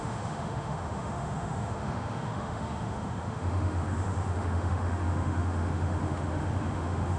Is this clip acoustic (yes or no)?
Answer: no